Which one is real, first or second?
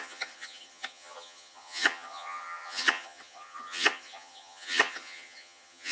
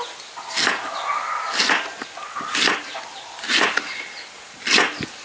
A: second